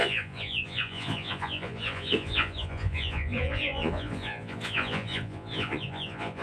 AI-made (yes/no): yes